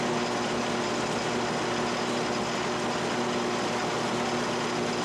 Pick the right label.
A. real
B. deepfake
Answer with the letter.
A